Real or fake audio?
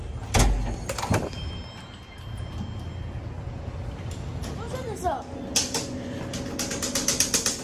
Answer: real